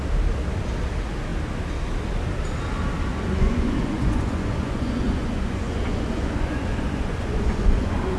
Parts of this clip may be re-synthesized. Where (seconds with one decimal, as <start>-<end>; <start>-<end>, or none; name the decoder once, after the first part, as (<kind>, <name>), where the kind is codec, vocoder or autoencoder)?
3.1-8.2 (vocoder, Vocos)